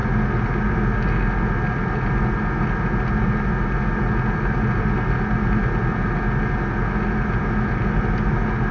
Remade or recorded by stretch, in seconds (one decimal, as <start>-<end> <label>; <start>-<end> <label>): 0.0-8.7 recorded